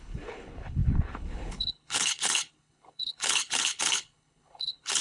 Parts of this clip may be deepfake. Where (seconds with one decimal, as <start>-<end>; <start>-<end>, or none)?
0.0-5.0